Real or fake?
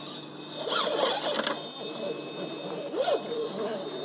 real